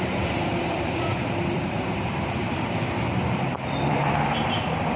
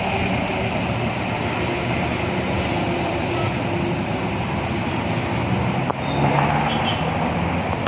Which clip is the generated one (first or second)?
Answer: first